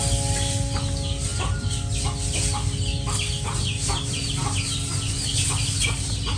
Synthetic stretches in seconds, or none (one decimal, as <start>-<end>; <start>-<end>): none